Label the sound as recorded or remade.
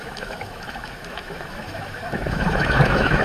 remade